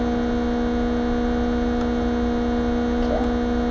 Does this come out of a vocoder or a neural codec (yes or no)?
no